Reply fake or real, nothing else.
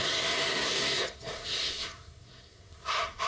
fake